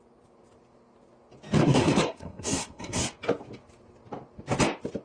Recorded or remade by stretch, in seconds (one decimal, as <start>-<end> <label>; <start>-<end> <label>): 0.0-1.6 recorded; 1.6-3.0 remade; 3.0-5.0 recorded

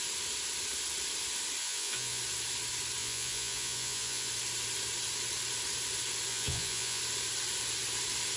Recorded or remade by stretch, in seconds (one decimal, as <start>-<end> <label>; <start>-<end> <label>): 0.0-1.6 recorded; 1.6-2.2 remade; 2.2-3.0 recorded; 3.0-4.3 remade; 4.3-6.3 recorded; 6.3-7.0 remade; 7.0-8.4 recorded

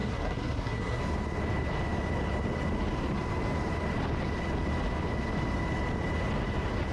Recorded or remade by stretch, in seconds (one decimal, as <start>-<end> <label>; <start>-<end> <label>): 0.0-1.0 remade; 1.0-6.9 recorded

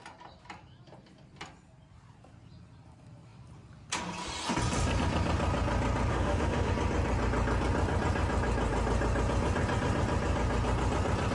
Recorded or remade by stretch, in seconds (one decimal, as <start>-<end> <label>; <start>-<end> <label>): 0.0-6.1 recorded; 6.1-6.7 remade; 6.7-11.3 recorded